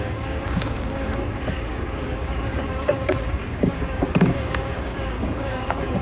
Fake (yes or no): yes